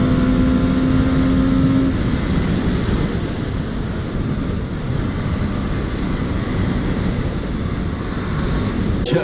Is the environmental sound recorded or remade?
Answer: recorded